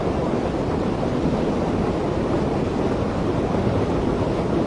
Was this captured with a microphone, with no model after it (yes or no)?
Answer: yes